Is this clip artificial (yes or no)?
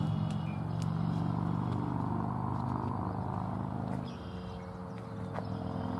no